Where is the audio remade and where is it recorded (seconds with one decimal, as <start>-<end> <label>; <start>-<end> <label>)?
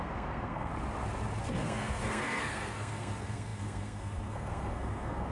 0.0-0.7 remade; 0.7-1.4 recorded; 1.4-5.3 remade